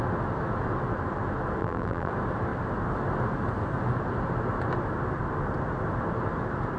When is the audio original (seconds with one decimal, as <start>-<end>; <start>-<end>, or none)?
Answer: 0.0-1.6; 2.1-6.8